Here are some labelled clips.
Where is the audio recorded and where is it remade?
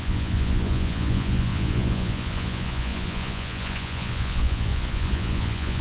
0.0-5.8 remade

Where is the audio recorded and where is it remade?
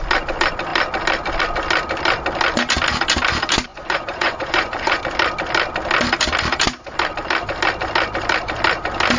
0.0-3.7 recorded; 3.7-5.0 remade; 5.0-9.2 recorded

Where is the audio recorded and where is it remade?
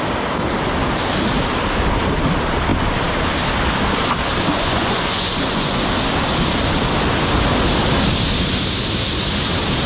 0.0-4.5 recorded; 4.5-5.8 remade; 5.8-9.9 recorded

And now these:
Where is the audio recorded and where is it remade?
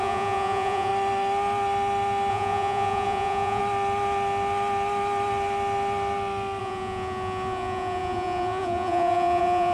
0.0-0.9 remade; 0.9-2.3 recorded; 2.3-3.6 remade; 3.6-6.6 recorded; 6.6-9.7 remade